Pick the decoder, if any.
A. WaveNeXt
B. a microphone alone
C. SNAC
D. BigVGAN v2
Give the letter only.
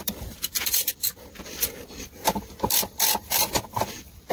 D